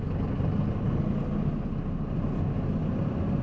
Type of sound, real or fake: real